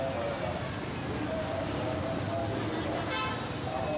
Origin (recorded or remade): recorded